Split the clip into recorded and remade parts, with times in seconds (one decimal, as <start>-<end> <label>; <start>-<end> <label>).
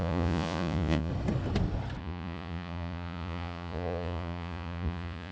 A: 0.0-1.1 remade; 1.1-2.0 recorded; 2.0-5.3 remade